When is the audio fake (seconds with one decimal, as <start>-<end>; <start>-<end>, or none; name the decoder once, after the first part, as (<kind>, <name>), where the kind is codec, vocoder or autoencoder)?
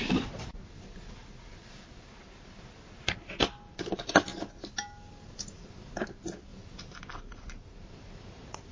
0.0-0.5 (vocoder, BigVGAN v2); 3.0-4.3; 5.7-6.5; 7.1-8.7